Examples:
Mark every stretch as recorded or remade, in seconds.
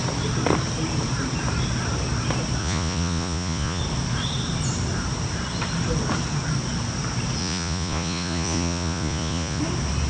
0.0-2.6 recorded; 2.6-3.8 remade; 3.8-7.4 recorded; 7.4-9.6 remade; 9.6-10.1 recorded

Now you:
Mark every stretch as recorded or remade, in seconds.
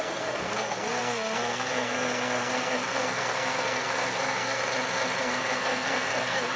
0.0-4.6 remade; 4.6-5.2 recorded; 5.2-6.6 remade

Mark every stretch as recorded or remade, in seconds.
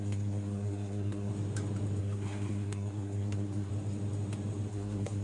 0.0-1.3 remade; 1.3-2.0 recorded; 2.0-3.7 remade; 3.7-4.7 recorded; 4.7-5.2 remade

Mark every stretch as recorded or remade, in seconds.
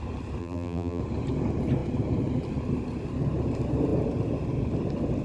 0.0-0.4 recorded; 0.4-1.0 remade; 1.0-5.2 recorded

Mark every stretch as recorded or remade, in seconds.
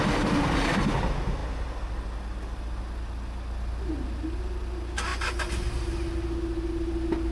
0.0-7.3 recorded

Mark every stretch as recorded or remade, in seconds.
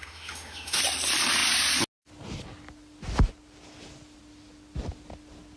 0.0-0.8 remade; 0.8-5.6 recorded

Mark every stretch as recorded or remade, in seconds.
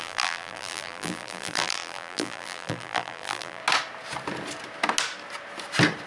0.0-3.6 remade; 3.6-6.1 recorded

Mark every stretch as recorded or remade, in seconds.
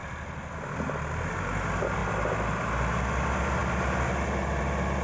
0.0-5.0 recorded